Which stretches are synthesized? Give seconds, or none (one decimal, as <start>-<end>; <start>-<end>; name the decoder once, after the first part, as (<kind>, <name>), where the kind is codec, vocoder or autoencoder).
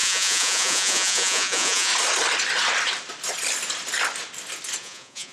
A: 0.0-1.9 (vocoder, Vocos); 4.8-5.3